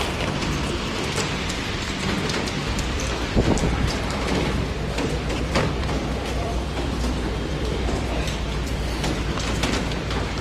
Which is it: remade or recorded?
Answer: remade